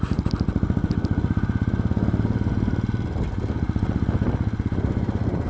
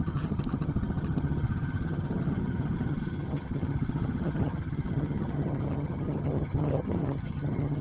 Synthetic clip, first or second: second